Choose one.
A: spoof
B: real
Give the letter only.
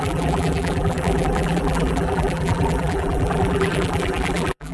A